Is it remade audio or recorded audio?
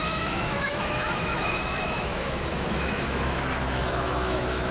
remade